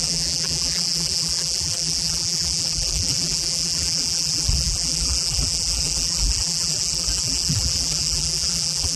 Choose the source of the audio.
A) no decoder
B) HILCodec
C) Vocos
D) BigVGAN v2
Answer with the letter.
D